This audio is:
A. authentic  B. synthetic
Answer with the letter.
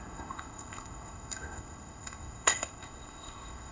B